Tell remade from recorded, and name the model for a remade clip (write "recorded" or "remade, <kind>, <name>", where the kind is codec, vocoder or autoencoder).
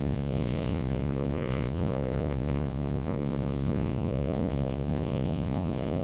remade, vocoder, Vocos